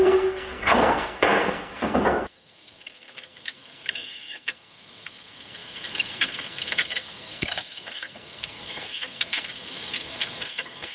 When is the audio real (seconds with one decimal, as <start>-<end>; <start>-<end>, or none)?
none